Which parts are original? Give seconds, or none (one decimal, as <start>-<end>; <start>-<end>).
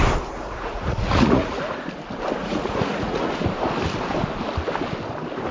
0.0-0.4; 1.6-2.4; 3.3-5.5